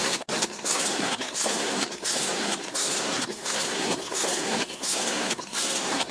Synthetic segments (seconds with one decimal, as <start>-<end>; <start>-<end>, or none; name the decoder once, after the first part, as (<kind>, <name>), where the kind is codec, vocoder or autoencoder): 0.0-6.1 (codec, SNAC)